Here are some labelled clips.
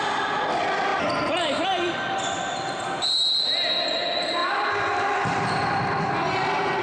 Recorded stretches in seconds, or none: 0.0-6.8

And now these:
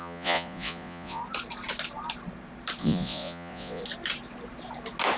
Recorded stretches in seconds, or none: 1.2-2.8; 3.8-5.2

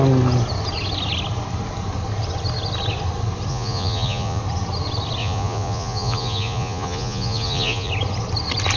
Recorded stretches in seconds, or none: 0.0-3.5; 4.4-5.2; 7.9-8.8

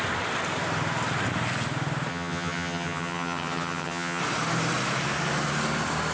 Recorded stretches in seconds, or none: 0.0-2.1; 4.2-6.1

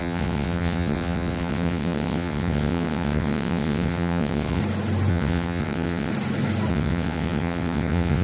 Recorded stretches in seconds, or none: 4.6-5.1; 6.1-6.7

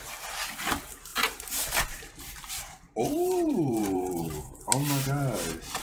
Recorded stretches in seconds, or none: 0.0-1.1; 4.6-5.8